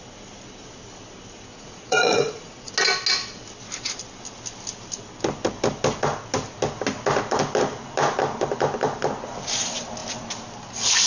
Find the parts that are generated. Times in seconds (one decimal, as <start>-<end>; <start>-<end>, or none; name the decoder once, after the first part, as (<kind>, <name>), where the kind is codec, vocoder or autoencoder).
1.5-2.7 (vocoder, Vocos)